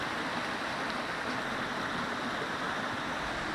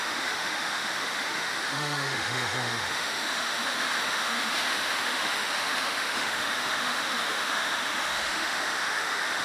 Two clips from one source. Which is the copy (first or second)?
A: second